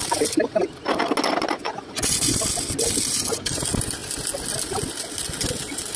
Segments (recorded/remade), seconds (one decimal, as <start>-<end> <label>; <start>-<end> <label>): 0.0-1.6 recorded; 1.6-2.4 remade; 2.4-6.0 recorded